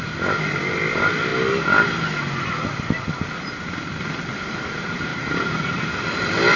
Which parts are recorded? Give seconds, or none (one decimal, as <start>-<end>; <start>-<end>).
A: 0.0-5.1; 5.9-6.6

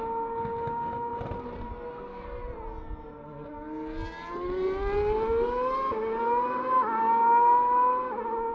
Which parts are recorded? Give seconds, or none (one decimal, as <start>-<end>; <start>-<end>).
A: 0.0-8.5

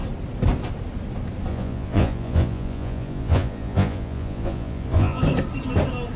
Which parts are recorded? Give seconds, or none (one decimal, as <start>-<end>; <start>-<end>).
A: 0.0-1.5; 5.2-6.2

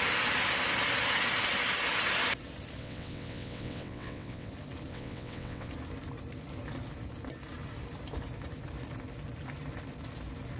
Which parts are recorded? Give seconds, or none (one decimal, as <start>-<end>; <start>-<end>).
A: 0.0-2.8; 4.5-4.9; 5.7-10.6

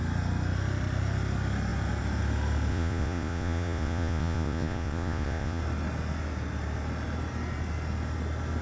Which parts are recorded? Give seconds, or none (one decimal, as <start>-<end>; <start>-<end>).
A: 0.0-2.7; 5.6-8.6

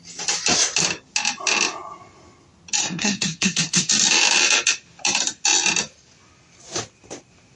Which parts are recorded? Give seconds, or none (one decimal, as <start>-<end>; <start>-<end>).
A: 0.0-2.8; 3.9-7.6

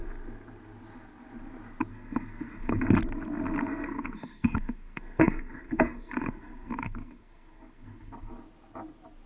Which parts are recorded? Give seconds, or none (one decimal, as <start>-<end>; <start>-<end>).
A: 0.0-1.9; 2.8-3.7; 8.3-9.3